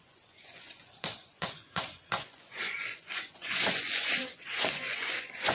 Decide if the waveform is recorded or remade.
remade